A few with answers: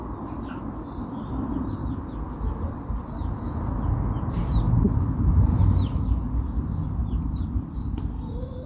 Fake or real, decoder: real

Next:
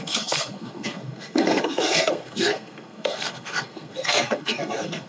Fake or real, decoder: fake, codec, SNAC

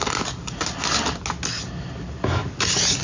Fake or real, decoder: real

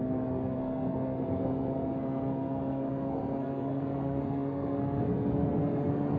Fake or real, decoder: fake, codec, SNAC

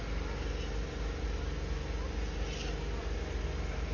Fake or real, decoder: real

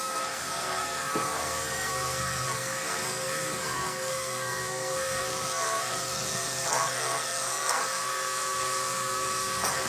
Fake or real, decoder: fake, codec, SNAC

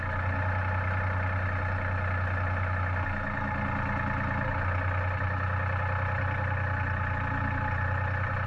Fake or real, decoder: real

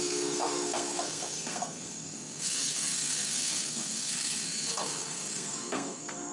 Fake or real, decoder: fake, codec, SNAC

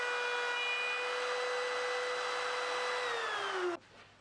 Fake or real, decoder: real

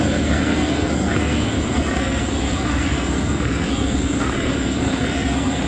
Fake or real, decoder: fake, codec, SNAC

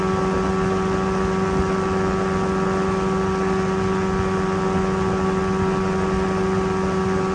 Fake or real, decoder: real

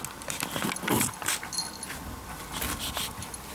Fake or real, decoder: real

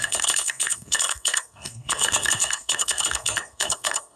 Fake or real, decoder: fake, codec, SNAC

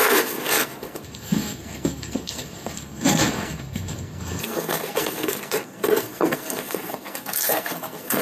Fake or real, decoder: fake, codec, SNAC